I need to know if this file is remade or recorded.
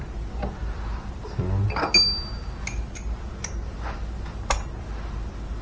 recorded